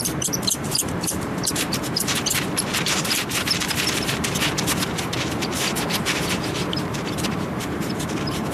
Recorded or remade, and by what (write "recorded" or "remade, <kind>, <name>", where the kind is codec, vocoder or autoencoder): remade, vocoder, BigVGAN v2